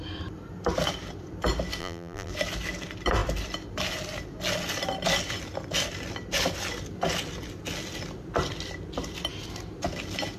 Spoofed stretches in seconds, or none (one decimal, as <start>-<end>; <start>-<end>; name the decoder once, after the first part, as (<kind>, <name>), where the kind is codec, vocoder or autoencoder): 1.8-2.3 (vocoder, BigVGAN v2)